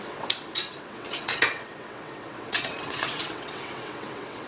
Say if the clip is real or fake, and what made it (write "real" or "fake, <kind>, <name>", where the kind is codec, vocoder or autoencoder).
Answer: fake, vocoder, WaveNeXt